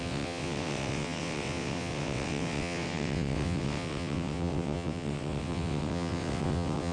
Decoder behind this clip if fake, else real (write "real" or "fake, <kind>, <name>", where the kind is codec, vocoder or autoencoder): fake, vocoder, WaveNeXt